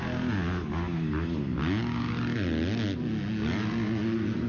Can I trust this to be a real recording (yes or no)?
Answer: yes